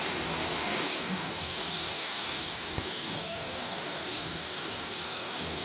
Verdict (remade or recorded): remade